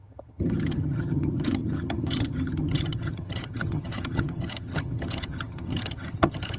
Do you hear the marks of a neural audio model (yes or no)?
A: yes